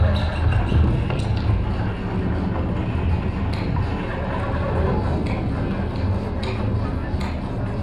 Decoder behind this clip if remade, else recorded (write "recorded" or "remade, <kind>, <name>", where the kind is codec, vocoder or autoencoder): recorded